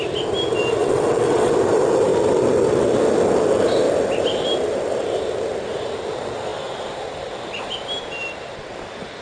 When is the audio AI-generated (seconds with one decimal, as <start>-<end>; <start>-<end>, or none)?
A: 0.8-1.5